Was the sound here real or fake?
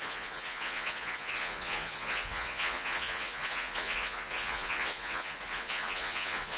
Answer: fake